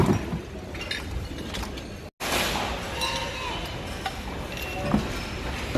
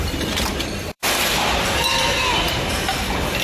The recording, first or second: first